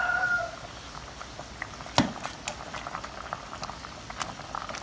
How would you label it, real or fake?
real